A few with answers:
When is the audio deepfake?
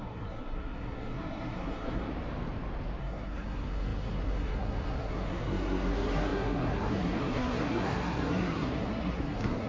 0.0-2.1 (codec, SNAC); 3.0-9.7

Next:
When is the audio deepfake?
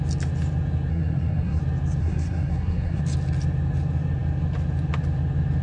0.9-1.6 (codec, SNAC); 2.0-3.0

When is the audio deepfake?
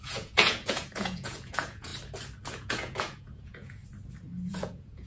0.0-1.9 (vocoder, Vocos); 2.5-3.8; 4.5-5.1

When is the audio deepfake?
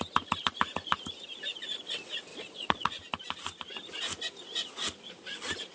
2.3-3.0 (vocoder, Vocos)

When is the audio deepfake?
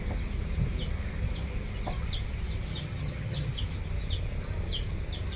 2.7-3.5 (vocoder, HiFi-GAN)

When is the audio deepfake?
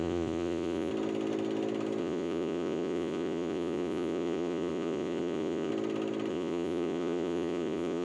0.0-0.9 (vocoder, Vocos); 2.0-5.7; 6.3-8.0